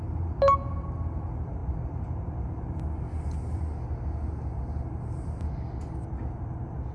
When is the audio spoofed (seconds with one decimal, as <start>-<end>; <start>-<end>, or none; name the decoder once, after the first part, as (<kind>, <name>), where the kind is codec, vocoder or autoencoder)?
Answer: none